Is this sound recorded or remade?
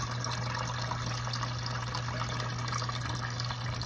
recorded